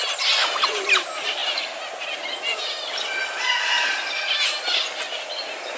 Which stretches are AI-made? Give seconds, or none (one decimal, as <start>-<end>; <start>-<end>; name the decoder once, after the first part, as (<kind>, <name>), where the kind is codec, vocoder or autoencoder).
none